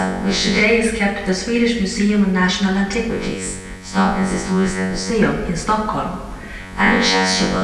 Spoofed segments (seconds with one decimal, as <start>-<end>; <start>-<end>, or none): 0.0-0.6; 3.1-5.1; 6.6-7.6